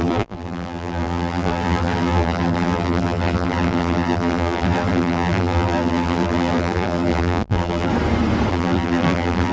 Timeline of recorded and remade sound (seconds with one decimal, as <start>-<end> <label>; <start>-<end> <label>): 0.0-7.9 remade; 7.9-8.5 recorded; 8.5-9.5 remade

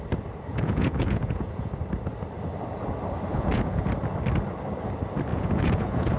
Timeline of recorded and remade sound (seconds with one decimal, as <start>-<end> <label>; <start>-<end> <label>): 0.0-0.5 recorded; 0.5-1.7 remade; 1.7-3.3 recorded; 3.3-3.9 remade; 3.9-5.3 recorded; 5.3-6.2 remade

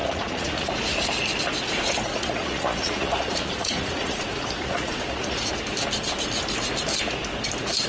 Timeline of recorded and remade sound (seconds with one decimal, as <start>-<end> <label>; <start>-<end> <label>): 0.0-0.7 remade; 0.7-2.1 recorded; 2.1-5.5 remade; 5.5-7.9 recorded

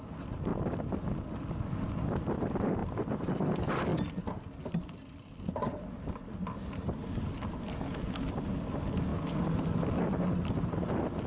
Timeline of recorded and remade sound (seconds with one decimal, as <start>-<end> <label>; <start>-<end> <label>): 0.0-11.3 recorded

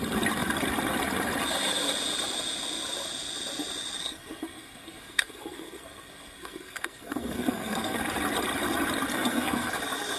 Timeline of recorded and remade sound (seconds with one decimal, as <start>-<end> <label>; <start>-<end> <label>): 0.0-4.0 recorded; 4.0-8.0 remade; 8.0-9.1 recorded; 9.1-9.7 remade; 9.7-10.2 recorded

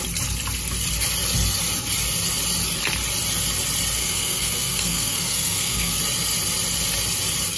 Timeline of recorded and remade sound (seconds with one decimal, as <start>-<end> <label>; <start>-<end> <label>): 0.0-4.0 recorded; 4.0-6.0 remade; 6.0-7.6 recorded